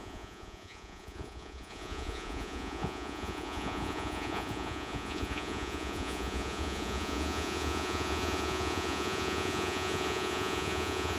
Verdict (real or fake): fake